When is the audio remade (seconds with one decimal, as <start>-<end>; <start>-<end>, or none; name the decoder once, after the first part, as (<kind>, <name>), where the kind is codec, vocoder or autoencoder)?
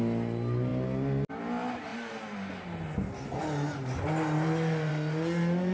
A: 1.9-2.5 (vocoder, BigVGAN v2)